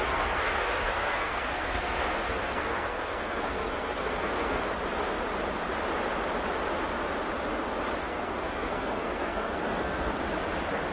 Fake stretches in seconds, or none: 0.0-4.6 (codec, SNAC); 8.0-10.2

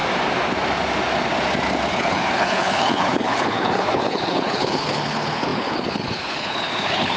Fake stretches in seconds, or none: 1.9-7.2 (codec, HILCodec)

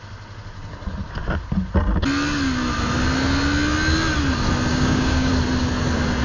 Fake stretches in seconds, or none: 4.7-5.3 (codec, DAC)

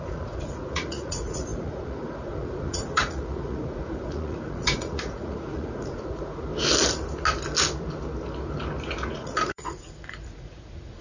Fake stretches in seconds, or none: 0.0-6.5 (vocoder, Vocos); 9.1-11.0

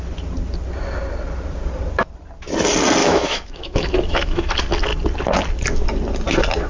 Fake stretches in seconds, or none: 3.0-4.5 (autoencoder, DAC-VAE)

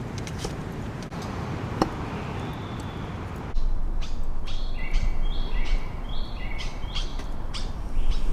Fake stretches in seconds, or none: 0.0-2.5 (vocoder, BigVGAN v2); 4.8-8.3